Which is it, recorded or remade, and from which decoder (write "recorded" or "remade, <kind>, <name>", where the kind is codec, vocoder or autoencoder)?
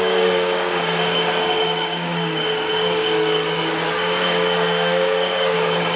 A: remade, codec, DAC